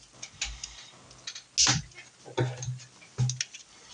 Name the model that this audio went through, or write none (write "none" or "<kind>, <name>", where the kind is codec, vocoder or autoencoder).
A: none